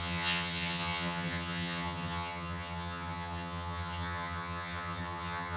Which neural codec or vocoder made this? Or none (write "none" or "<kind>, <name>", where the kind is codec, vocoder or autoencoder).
vocoder, HiFi-GAN